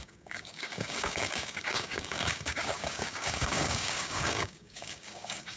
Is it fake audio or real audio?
fake